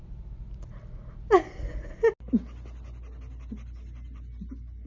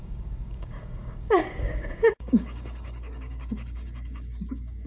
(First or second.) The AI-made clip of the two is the second